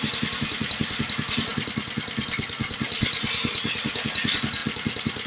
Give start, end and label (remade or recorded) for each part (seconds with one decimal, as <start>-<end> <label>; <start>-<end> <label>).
0.0-5.3 recorded